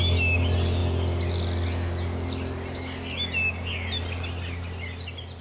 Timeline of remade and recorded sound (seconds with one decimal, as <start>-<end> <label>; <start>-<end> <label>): 0.0-5.4 recorded